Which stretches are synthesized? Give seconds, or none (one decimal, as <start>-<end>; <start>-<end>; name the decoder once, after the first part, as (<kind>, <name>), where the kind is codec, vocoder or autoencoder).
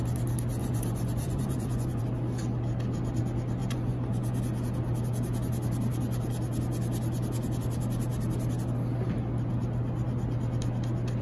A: 0.6-2.0 (vocoder, Vocos); 3.6-4.4